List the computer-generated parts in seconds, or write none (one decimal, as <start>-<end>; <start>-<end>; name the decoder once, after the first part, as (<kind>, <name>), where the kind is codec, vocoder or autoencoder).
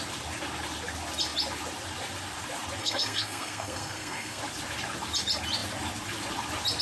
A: 2.8-4.4 (codec, SNAC)